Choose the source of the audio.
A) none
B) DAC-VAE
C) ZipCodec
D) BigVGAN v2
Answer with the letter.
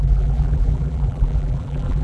D